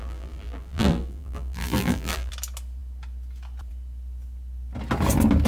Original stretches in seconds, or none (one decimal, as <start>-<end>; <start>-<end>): 2.3-5.5